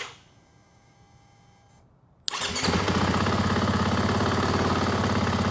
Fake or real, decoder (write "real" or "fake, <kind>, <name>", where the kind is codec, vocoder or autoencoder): real